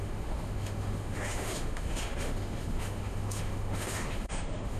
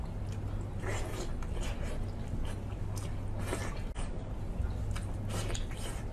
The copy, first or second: first